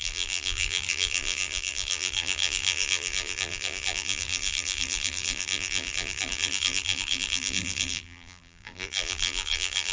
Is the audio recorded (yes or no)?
no